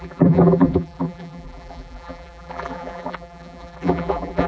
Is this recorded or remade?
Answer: remade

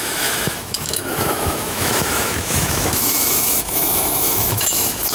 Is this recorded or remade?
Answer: remade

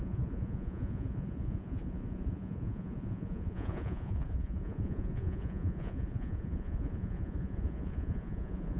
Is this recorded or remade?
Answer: remade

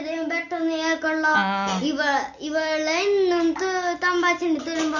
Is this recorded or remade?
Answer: recorded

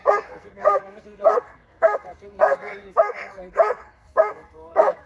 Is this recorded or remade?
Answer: remade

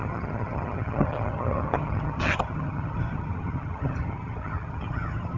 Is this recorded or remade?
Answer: remade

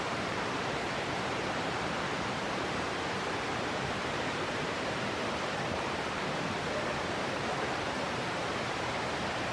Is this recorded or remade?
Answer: remade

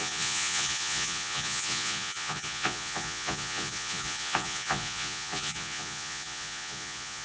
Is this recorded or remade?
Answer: remade